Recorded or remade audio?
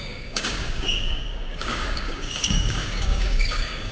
remade